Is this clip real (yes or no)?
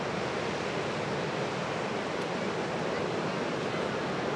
yes